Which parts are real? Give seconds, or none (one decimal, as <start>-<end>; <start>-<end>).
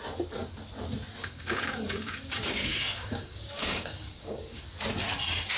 0.0-1.2; 4.6-5.6